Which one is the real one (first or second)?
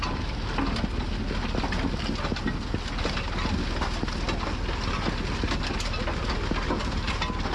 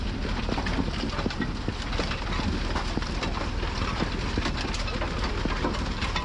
first